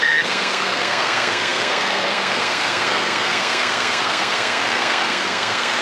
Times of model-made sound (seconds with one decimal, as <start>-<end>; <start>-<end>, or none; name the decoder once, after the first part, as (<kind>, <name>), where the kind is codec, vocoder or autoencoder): 0.0-5.8 (codec, SNAC)